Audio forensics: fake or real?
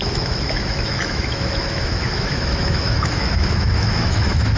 fake